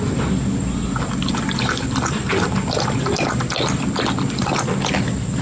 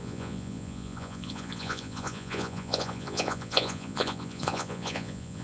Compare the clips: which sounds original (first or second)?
first